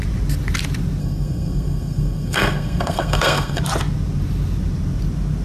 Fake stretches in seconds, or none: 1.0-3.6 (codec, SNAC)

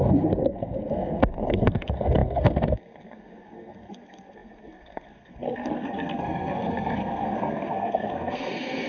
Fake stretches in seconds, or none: 0.0-8.9 (codec, SNAC)

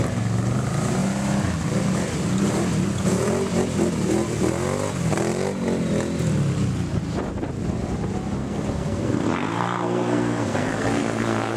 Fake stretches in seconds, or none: 8.4-11.6 (codec, SNAC)

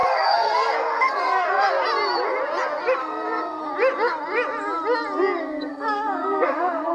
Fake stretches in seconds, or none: 0.0-1.7 (codec, SNAC); 3.0-3.6; 5.4-6.9

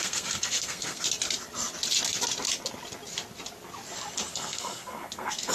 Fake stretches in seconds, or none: 0.0-1.0 (codec, SNAC); 4.3-5.5

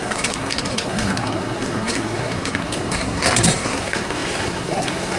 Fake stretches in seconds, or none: 0.0-5.2 (codec, SNAC)

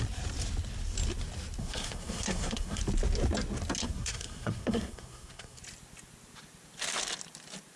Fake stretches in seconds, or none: 1.6-2.8 (codec, SNAC); 3.8-5.6

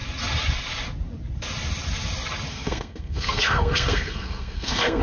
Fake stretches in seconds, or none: 2.5-5.0 (codec, SNAC)